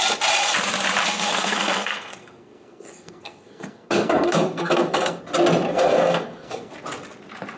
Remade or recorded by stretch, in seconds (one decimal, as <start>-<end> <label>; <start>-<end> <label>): 0.0-1.0 recorded; 1.0-5.2 remade; 5.2-5.7 recorded; 5.7-6.7 remade; 6.7-7.6 recorded